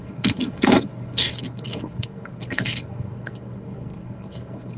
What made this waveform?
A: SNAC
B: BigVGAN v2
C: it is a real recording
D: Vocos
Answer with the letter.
A